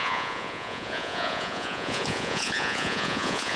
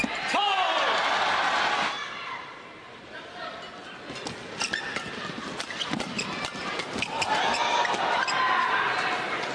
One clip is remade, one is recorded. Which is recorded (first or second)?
second